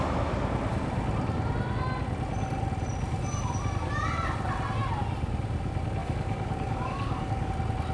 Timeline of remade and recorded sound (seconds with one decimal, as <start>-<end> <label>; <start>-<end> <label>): 0.0-6.0 recorded; 6.0-7.5 remade; 7.5-7.9 recorded